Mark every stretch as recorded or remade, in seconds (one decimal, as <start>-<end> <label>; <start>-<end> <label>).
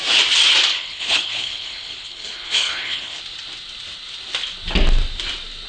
0.0-0.7 recorded; 0.7-3.2 remade; 3.2-5.7 recorded